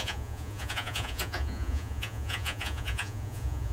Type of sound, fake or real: fake